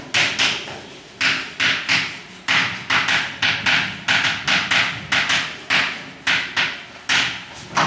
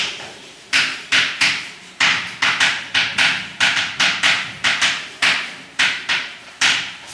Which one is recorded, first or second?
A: first